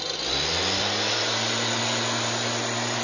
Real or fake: real